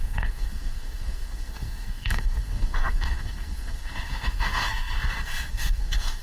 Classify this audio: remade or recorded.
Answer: remade